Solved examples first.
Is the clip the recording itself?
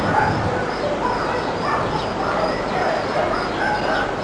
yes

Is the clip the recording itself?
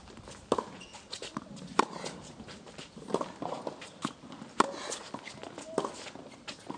yes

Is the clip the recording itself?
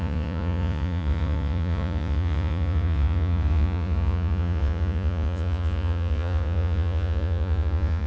no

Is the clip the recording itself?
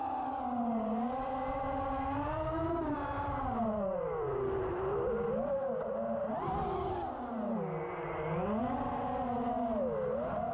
yes